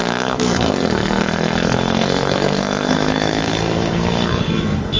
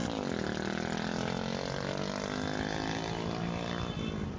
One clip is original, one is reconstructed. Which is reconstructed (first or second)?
first